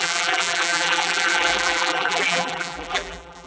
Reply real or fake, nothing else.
fake